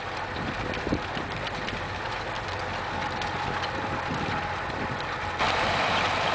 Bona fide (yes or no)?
no